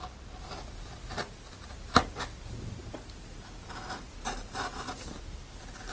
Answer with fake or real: real